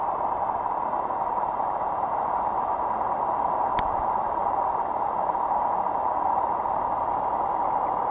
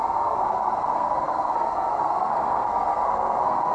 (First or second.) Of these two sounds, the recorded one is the first